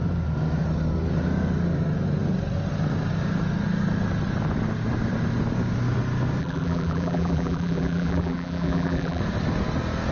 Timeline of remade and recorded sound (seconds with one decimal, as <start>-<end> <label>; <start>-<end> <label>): 0.0-6.4 recorded; 6.4-9.2 remade; 9.2-10.1 recorded